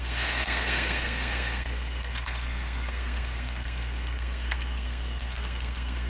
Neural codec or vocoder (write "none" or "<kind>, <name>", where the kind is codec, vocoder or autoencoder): codec, SNAC